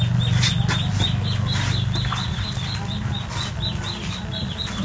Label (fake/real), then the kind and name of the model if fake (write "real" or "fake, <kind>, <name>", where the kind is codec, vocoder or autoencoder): real